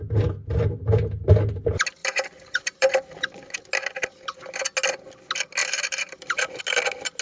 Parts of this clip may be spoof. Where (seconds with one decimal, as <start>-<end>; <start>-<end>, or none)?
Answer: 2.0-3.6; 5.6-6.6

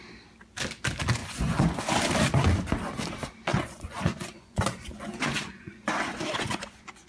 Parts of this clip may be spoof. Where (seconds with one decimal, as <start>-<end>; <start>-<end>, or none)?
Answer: 1.2-1.8; 3.5-7.1

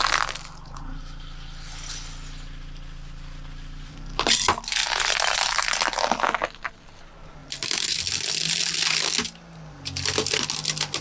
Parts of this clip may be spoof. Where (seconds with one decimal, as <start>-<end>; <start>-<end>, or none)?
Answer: 4.8-5.6; 7.4-8.0

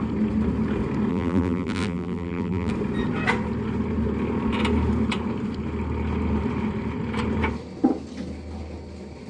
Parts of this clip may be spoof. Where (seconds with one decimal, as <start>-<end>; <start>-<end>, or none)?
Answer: 1.1-2.7

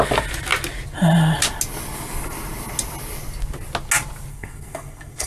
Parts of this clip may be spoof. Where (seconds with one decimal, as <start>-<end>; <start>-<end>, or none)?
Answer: 4.3-5.3

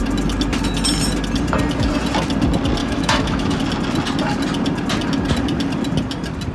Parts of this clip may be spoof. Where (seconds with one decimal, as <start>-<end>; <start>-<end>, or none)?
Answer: 2.8-3.6